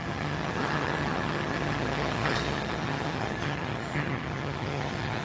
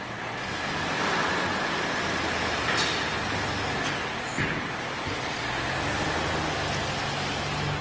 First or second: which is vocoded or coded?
first